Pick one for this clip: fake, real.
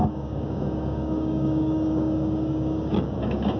fake